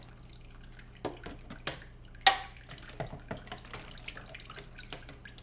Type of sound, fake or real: real